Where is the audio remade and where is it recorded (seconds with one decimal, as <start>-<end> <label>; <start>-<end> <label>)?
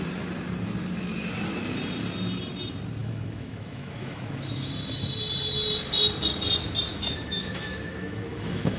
0.0-3.0 recorded; 3.0-4.7 remade; 4.7-6.9 recorded; 6.9-8.8 remade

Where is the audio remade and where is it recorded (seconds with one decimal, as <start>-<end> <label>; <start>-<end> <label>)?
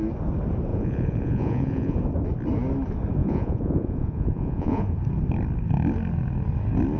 0.0-0.7 recorded; 0.7-2.0 remade; 2.0-3.2 recorded; 3.2-5.0 remade; 5.0-7.0 recorded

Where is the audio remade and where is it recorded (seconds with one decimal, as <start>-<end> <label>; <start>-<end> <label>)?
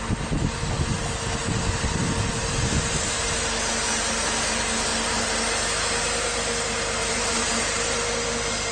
0.0-7.0 recorded; 7.0-7.5 remade; 7.5-8.7 recorded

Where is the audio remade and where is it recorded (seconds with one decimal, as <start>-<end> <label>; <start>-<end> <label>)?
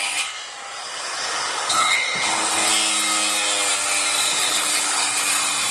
0.0-0.8 recorded; 0.8-2.7 remade; 2.7-4.3 recorded; 4.3-5.2 remade; 5.2-5.7 recorded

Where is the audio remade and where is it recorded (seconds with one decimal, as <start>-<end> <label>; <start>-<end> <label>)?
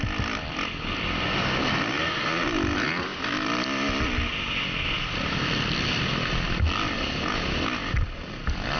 0.0-8.8 recorded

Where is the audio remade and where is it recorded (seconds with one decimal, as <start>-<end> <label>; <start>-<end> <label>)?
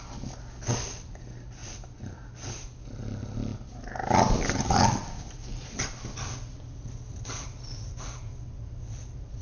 0.0-9.4 recorded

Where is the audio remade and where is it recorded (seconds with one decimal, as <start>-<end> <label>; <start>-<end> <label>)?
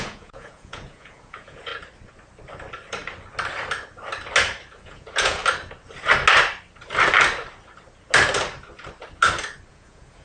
0.0-1.7 remade; 1.7-4.8 recorded; 4.8-5.4 remade; 5.4-9.7 recorded; 9.7-10.2 remade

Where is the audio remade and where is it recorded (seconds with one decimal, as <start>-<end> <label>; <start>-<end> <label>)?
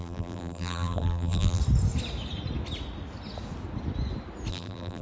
0.0-1.6 remade; 1.6-4.5 recorded; 4.5-5.0 remade